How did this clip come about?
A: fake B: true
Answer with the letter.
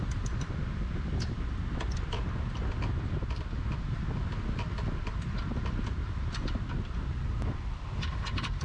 B